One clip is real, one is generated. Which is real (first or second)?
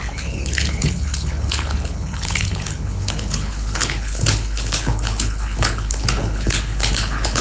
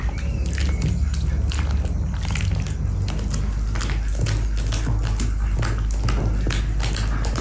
second